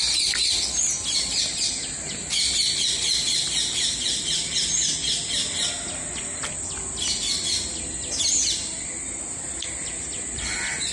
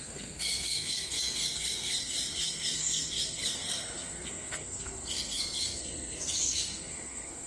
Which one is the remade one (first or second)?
second